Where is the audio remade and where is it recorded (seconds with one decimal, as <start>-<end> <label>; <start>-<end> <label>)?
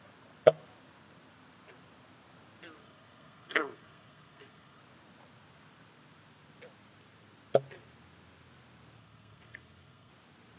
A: 0.0-2.8 recorded; 2.8-4.8 remade; 4.8-9.0 recorded; 9.0-10.1 remade; 10.1-10.6 recorded